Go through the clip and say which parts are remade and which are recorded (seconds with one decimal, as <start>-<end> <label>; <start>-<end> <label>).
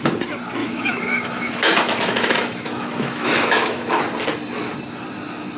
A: 0.0-0.6 recorded; 0.6-4.0 remade; 4.0-5.6 recorded